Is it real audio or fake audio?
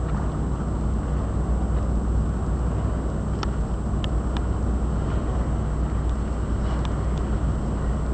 real